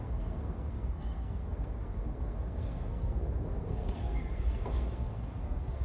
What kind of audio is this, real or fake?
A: fake